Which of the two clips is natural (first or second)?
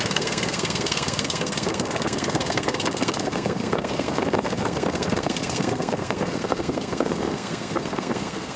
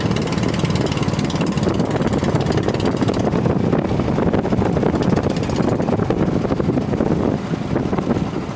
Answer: second